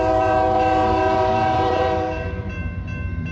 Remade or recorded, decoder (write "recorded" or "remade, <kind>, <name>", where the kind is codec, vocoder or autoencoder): remade, vocoder, BigVGAN v2